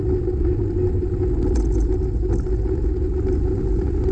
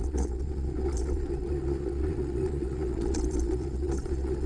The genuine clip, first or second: first